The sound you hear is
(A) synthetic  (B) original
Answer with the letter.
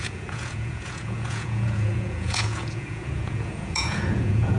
A